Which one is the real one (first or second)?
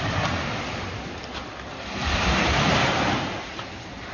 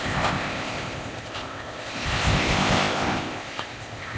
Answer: first